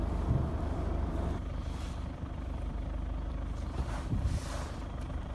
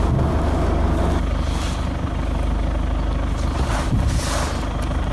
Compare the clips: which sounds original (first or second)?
second